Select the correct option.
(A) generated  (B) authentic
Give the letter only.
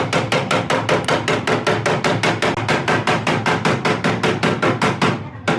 B